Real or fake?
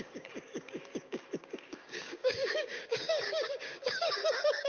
fake